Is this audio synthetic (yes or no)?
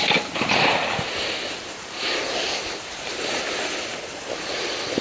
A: no